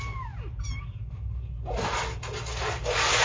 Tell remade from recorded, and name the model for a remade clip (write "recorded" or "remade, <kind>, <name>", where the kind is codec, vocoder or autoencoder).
recorded